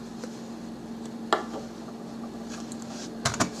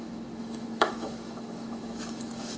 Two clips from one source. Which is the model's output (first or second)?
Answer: second